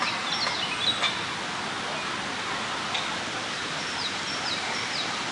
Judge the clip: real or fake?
real